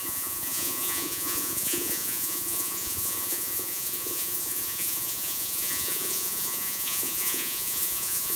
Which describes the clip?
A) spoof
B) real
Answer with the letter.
A